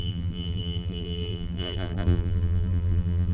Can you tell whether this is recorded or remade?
remade